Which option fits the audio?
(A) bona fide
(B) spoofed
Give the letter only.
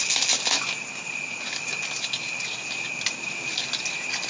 A